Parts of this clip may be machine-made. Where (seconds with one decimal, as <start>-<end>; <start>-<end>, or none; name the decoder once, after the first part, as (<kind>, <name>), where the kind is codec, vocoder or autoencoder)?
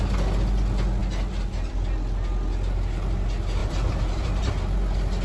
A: 3.6-4.5 (vocoder, BigVGAN v2)